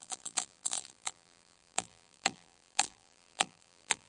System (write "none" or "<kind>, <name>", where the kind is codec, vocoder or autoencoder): vocoder, BigVGAN v2